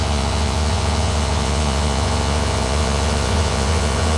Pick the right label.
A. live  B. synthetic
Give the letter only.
B